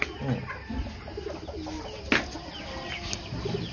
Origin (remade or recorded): recorded